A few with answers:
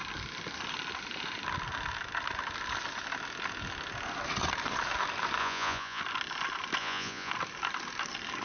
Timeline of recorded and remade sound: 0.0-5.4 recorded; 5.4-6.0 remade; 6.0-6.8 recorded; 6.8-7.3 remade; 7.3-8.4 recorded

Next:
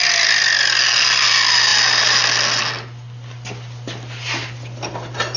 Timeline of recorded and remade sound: 0.0-5.4 recorded

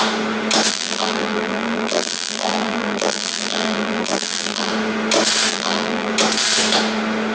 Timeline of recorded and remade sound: 0.0-0.7 recorded; 0.7-4.7 remade; 4.7-5.5 recorded; 5.5-6.1 remade; 6.1-7.3 recorded

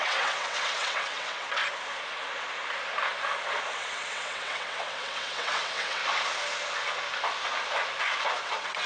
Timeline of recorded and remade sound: 0.0-1.6 remade; 1.6-3.7 recorded; 3.7-6.0 remade; 6.0-8.4 recorded; 8.4-8.9 remade

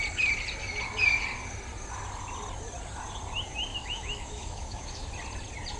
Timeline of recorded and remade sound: 0.0-3.7 recorded; 3.7-5.1 remade; 5.1-5.8 recorded

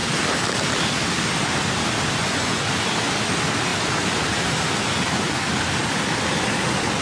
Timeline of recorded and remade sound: 0.0-2.2 recorded; 2.2-2.7 remade; 2.7-7.0 recorded